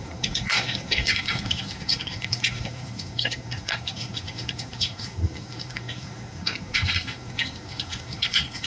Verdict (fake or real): fake